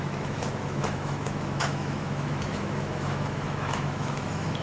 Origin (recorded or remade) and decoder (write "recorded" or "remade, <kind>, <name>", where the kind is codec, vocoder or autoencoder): remade, autoencoder, DAC-VAE